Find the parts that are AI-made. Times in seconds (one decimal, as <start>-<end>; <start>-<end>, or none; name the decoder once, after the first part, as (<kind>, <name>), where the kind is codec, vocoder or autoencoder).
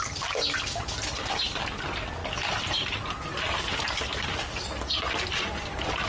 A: none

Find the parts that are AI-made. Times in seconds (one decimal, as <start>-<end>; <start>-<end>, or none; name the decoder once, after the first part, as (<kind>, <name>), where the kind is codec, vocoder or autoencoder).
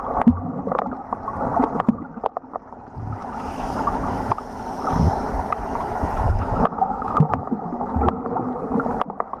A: 3.2-8.0 (autoencoder, DAC-VAE)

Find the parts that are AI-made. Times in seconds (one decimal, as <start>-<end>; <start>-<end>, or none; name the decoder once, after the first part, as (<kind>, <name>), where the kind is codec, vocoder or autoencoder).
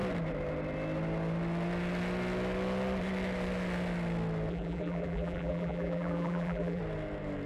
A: 4.5-6.8 (vocoder, BigVGAN v2)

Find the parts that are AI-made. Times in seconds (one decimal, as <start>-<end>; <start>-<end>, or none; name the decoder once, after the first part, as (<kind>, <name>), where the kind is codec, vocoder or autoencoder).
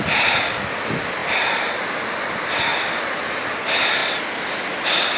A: 2.7-3.4 (vocoder, BigVGAN v2)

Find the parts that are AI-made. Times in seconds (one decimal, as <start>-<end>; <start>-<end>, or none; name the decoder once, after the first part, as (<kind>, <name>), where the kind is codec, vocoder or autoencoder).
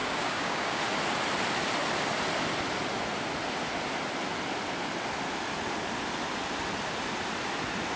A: 0.0-0.8 (codec, DAC)